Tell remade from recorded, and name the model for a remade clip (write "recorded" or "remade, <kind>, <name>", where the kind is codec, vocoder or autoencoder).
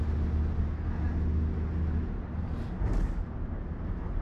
recorded